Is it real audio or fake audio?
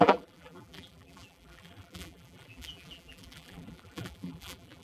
fake